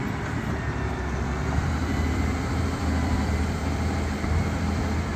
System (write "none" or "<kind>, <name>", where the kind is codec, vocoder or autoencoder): vocoder, BigVGAN v2